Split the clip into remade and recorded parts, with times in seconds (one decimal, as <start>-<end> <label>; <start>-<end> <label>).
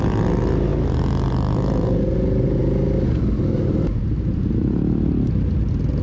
0.0-6.0 recorded